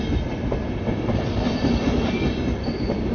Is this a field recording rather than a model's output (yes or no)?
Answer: yes